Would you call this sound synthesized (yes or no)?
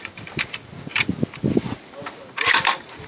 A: yes